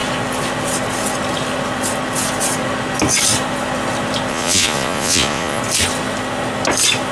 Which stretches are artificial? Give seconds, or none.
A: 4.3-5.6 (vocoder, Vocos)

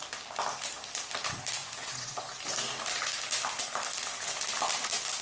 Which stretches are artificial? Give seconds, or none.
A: 1.6-2.4 (vocoder, Vocos)

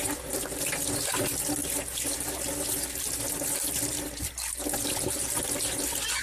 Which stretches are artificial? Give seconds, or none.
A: none

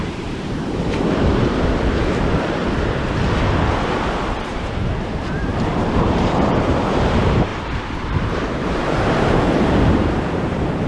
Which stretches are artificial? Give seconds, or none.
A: 0.0-2.6 (vocoder, BigVGAN v2); 4.2-10.9

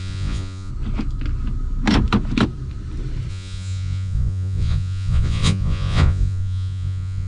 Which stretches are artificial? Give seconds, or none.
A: 0.0-0.7 (vocoder, Vocos); 3.3-7.3

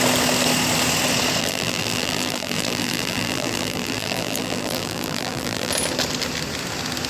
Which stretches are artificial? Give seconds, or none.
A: 1.4-5.7 (vocoder, BigVGAN v2)

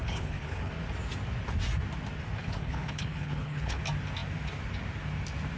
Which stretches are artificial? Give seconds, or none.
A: 0.0-0.7 (codec, HILCodec); 2.4-3.8

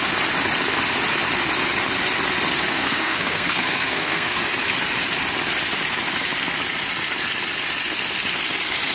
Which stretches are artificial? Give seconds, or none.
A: 2.7-4.4 (codec, SNAC)